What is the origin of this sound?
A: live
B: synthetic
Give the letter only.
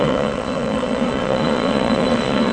B